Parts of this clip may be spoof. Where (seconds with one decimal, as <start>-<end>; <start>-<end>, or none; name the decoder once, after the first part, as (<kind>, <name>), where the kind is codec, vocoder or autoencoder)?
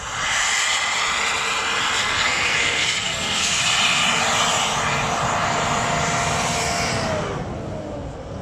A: 2.0-3.6 (codec, SNAC)